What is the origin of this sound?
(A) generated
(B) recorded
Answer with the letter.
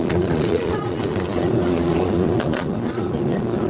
A